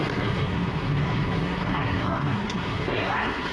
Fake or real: fake